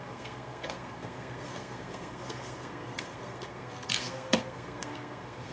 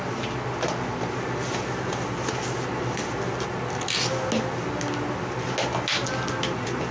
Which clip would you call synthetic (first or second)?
first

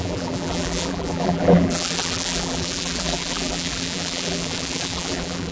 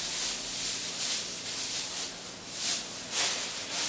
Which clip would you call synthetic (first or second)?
first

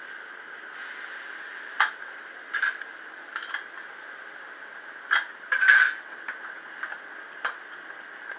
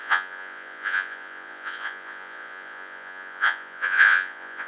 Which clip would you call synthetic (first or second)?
second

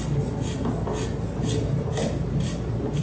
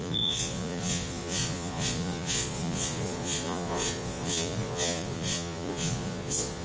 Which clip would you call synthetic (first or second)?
second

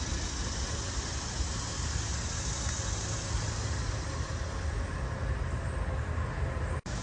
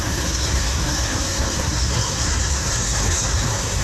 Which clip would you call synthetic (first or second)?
second